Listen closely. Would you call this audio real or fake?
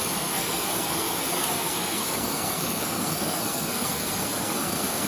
fake